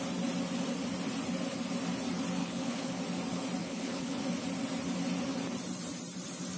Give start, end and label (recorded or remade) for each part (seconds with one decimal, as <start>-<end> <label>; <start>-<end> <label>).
0.0-2.4 recorded; 2.4-3.0 remade; 3.0-3.6 recorded; 3.6-4.2 remade; 4.2-6.6 recorded

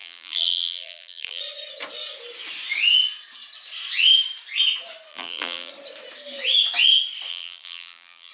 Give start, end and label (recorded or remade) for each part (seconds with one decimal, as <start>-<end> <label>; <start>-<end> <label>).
0.0-1.4 remade; 1.4-5.1 recorded; 5.1-5.7 remade; 5.7-7.3 recorded; 7.3-8.3 remade

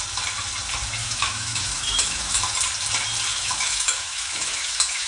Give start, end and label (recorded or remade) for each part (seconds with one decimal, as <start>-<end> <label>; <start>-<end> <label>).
0.0-1.0 recorded; 1.0-2.4 remade; 2.4-3.3 recorded; 3.3-5.1 remade